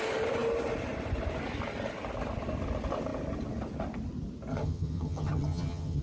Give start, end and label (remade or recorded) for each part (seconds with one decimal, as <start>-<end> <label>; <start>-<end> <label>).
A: 0.0-4.5 recorded; 4.5-6.0 remade